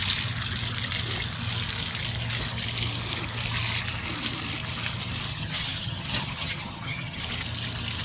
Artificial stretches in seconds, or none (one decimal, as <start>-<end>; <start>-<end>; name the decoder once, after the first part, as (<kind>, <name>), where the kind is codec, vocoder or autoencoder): 5.3-7.2 (vocoder, HiFi-GAN)